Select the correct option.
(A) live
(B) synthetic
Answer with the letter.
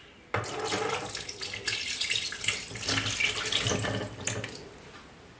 A